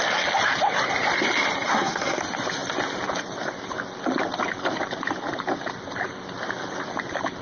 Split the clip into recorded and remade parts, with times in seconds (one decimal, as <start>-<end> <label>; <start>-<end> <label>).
0.0-1.7 recorded; 1.7-2.2 remade; 2.2-7.4 recorded